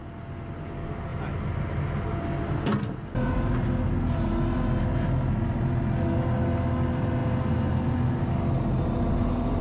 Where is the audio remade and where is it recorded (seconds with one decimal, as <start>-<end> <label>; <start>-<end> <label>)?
0.0-9.6 recorded